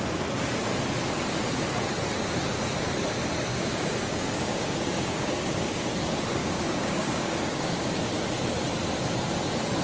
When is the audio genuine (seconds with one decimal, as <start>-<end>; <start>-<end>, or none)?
0.0-3.5; 5.9-6.4; 8.0-9.8